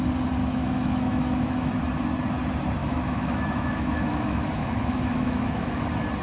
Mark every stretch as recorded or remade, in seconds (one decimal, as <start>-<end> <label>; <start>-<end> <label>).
0.0-0.4 recorded; 0.4-1.7 remade; 1.7-2.8 recorded; 2.8-5.8 remade; 5.8-6.2 recorded